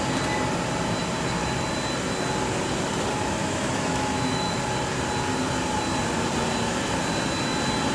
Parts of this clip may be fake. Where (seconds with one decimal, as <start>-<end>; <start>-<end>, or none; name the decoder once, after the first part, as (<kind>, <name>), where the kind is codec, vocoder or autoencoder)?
3.4-4.6 (autoencoder, DAC-VAE)